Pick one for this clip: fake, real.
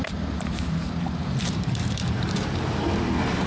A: fake